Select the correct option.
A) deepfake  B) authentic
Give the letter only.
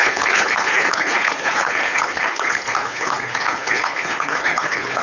A